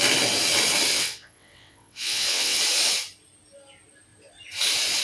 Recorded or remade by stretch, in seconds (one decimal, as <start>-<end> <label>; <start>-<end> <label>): 0.0-0.9 recorded; 0.9-2.6 remade; 2.6-5.0 recorded